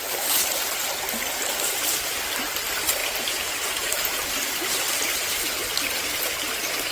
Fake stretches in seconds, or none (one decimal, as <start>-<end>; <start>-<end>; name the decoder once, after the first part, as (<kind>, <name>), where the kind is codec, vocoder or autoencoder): 3.0-5.5 (vocoder, BigVGAN v2)

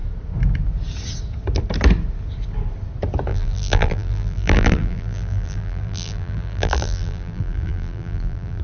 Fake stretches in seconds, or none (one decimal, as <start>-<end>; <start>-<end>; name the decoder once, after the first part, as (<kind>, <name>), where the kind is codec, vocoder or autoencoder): 3.3-8.6 (vocoder, BigVGAN v2)

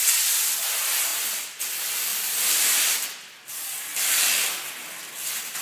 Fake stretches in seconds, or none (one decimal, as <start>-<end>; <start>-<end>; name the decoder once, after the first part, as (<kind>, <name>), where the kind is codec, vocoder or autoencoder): 1.1-1.6 (vocoder, BigVGAN v2); 2.1-2.9; 3.9-5.6

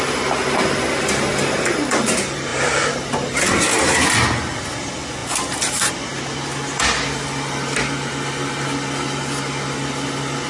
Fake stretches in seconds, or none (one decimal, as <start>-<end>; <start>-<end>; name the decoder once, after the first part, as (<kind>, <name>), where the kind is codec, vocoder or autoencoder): 2.5-3.5 (vocoder, BigVGAN v2)

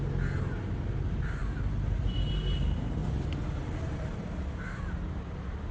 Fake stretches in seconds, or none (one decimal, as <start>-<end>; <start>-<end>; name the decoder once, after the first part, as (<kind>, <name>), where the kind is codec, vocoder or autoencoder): 1.4-2.0 (vocoder, BigVGAN v2); 3.0-4.9

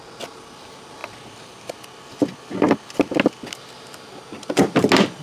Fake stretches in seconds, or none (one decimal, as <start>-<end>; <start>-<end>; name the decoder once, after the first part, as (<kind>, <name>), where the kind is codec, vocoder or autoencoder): none